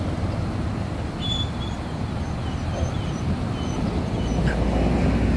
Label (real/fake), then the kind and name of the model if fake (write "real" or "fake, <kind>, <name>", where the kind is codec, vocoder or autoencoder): real